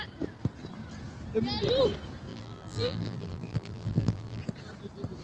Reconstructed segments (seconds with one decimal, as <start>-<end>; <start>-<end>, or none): 2.3-4.4